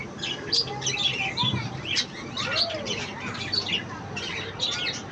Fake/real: real